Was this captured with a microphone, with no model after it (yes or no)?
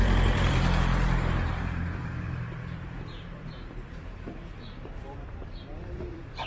no